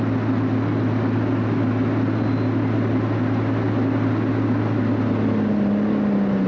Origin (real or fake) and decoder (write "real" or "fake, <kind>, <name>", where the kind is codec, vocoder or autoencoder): real